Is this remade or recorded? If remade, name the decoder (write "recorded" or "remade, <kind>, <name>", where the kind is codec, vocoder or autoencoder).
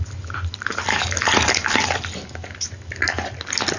recorded